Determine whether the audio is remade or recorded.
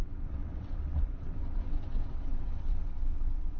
remade